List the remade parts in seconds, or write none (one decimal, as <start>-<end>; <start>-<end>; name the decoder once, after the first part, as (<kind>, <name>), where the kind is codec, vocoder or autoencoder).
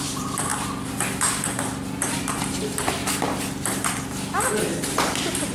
0.0-0.5 (vocoder, BigVGAN v2); 2.0-3.0; 4.5-5.5